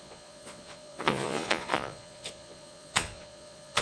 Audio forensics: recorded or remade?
remade